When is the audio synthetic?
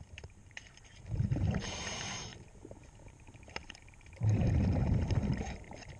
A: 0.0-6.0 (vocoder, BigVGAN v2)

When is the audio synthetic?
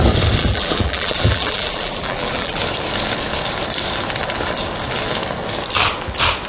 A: 0.4-2.6 (vocoder, BigVGAN v2)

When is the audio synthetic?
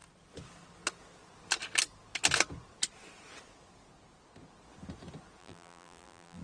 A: 5.4-6.4 (vocoder, BigVGAN v2)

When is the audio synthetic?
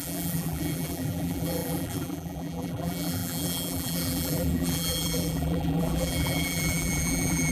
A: 0.0-7.5 (vocoder, BigVGAN v2)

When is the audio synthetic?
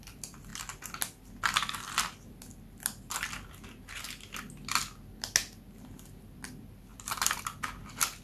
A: 6.9-7.4 (vocoder, BigVGAN v2)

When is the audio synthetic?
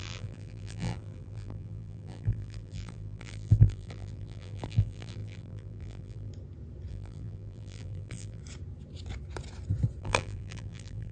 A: 0.0-6.3 (vocoder, BigVGAN v2); 6.9-8.4; 10.0-11.1